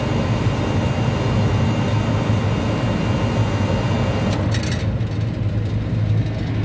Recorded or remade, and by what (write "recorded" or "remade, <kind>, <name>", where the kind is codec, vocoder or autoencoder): recorded